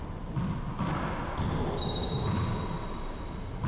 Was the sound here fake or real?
real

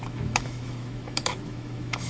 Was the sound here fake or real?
fake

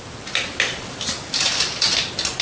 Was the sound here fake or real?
real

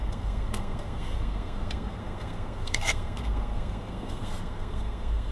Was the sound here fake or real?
fake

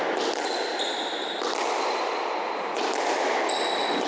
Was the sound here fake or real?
real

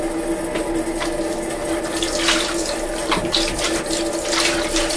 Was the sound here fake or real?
real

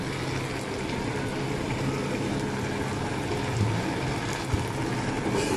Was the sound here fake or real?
real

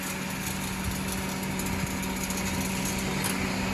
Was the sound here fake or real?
real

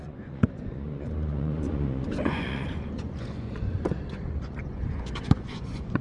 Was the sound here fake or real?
fake